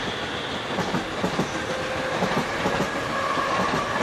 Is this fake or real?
real